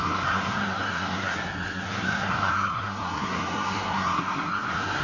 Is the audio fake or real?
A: fake